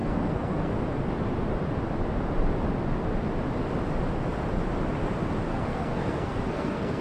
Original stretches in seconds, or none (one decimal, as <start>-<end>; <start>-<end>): 0.7-5.5